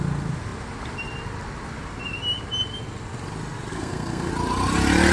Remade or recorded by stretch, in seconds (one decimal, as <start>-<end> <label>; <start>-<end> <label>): 0.0-3.7 recorded; 3.7-4.3 remade; 4.3-5.1 recorded